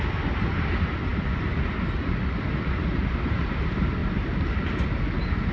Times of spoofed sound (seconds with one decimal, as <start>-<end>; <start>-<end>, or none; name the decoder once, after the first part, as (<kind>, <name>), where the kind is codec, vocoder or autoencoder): none